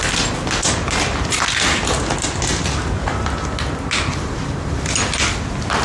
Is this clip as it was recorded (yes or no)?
yes